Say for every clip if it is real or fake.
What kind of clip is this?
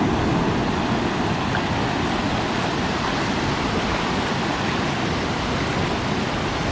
real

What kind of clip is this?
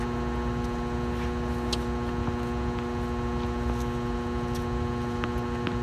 real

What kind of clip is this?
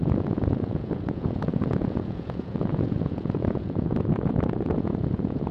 fake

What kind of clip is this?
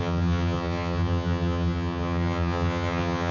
fake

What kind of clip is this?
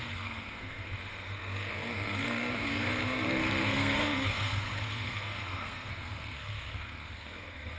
fake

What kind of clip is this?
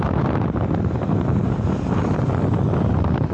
real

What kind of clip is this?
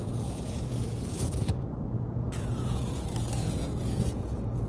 fake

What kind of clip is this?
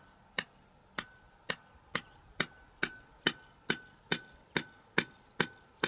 real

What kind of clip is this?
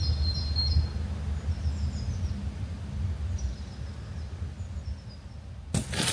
real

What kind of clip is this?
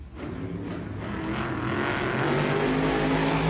real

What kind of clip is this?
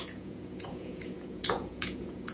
fake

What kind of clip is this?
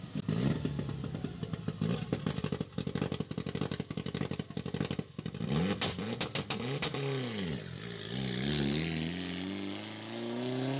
real